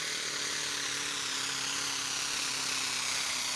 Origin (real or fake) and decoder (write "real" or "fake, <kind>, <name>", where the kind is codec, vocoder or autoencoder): real